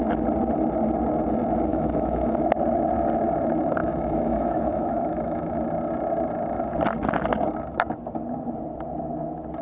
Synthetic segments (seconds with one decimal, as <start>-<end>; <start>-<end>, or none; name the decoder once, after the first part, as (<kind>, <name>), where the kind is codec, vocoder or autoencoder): 1.7-2.4 (autoencoder, DAC-VAE); 3.8-5.6